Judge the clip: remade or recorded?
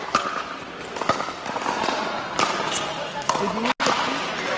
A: recorded